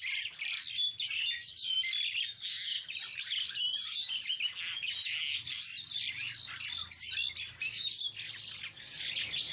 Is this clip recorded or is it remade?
recorded